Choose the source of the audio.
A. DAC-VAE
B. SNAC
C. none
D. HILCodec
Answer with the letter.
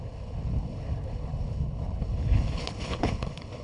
D